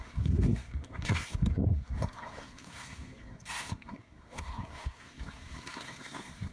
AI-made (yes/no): yes